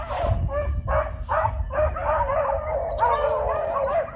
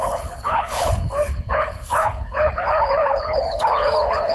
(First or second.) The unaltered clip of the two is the first